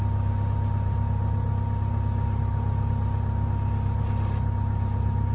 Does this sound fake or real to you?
real